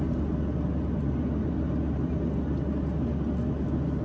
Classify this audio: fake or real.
real